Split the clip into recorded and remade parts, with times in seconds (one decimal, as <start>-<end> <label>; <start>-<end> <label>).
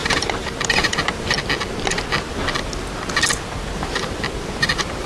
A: 0.0-1.3 remade; 1.3-5.1 recorded